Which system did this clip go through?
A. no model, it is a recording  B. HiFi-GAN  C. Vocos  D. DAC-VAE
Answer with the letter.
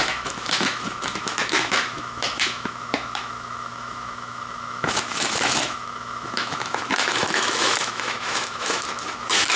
D